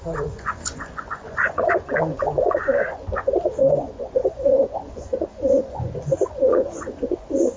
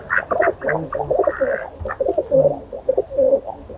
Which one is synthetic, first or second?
first